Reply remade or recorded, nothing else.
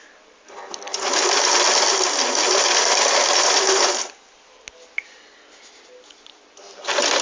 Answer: recorded